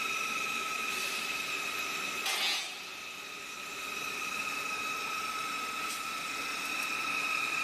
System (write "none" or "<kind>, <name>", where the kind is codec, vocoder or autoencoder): none